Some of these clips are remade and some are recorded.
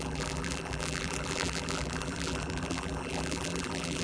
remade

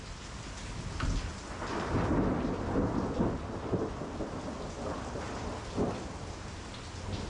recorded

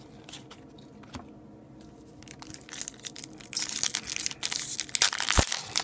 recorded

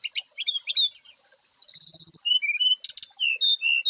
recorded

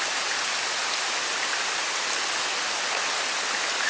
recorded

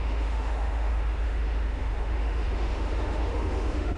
remade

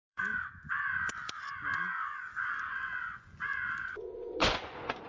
remade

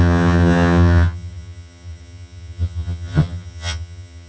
remade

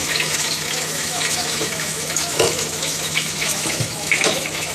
remade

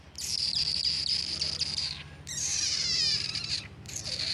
remade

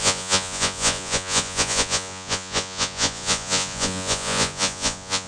remade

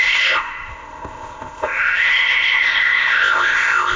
remade